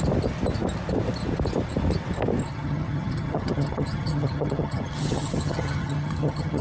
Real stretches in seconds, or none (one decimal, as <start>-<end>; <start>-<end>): 0.0-2.4

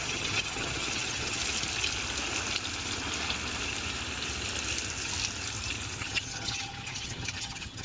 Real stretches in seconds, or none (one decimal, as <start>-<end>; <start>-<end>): 1.4-6.0

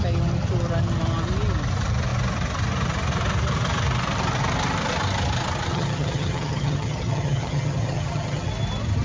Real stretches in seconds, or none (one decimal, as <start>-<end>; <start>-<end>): 0.0-5.7; 8.5-9.0

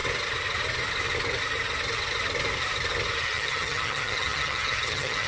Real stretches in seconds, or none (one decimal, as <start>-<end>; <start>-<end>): 0.0-3.2